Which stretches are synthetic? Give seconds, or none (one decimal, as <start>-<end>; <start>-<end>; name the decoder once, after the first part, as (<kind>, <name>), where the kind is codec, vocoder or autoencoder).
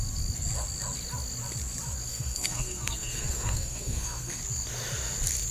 2.1-4.4 (codec, SNAC)